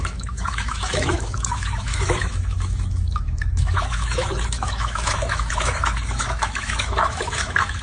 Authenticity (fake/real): fake